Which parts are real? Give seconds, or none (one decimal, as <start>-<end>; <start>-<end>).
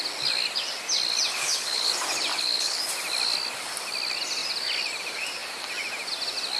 0.0-1.3; 1.9-2.3; 2.8-6.6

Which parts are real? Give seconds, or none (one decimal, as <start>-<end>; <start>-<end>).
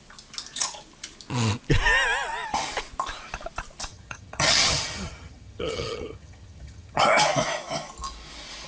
0.0-3.9; 7.0-8.7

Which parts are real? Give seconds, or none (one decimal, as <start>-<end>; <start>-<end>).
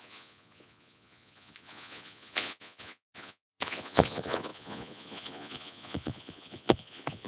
none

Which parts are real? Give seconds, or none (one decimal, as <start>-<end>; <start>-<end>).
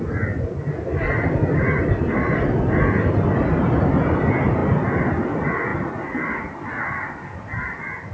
0.0-8.1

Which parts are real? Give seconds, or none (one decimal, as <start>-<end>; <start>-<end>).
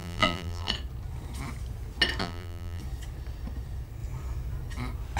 0.7-2.2; 2.8-5.2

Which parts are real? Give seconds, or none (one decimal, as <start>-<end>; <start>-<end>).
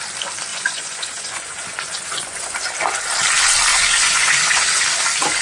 0.0-0.5; 2.7-3.7; 4.8-5.4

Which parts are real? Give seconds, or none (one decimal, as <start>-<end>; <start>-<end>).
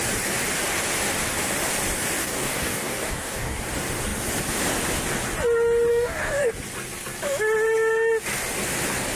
0.0-2.2; 3.6-5.9; 6.5-9.2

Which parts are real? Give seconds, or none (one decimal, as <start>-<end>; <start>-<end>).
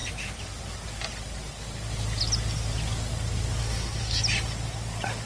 0.0-3.6; 4.2-5.3